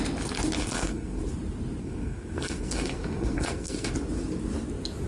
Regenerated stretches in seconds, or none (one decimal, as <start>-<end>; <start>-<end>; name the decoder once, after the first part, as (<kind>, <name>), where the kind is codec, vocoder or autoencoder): 0.6-1.2 (codec, SNAC); 1.8-3.9